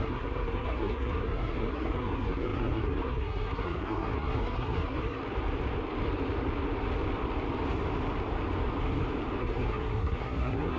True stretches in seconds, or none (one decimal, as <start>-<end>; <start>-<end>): 5.2-9.4